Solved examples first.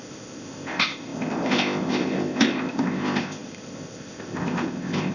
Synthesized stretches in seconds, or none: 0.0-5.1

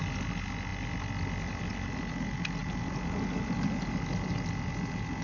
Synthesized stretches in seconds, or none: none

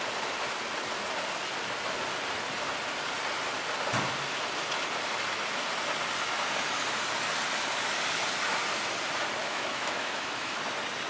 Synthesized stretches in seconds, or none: 9.4-10.6

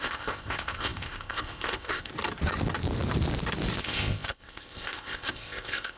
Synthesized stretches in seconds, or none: 0.0-2.1; 3.8-6.0

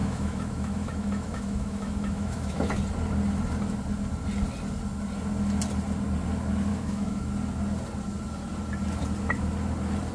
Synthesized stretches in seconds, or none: 0.0-2.7; 6.7-7.3

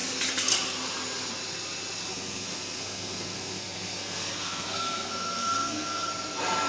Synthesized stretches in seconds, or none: 2.1-6.1

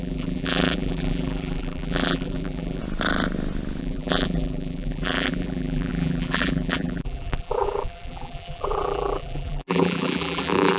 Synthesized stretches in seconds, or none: 0.0-2.8; 3.8-10.8